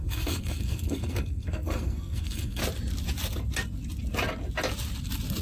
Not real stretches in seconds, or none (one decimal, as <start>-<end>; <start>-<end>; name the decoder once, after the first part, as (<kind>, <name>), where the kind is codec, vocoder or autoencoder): 0.0-2.6 (codec, SNAC)